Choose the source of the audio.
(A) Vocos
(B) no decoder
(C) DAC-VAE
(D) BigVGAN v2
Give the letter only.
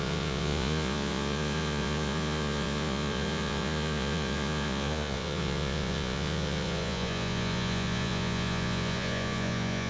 A